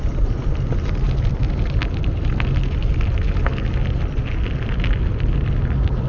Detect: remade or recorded recorded